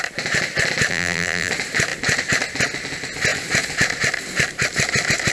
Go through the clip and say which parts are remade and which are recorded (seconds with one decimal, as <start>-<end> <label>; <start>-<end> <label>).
0.0-0.9 recorded; 0.9-1.5 remade; 1.5-5.3 recorded